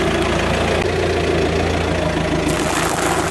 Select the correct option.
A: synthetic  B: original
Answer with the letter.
B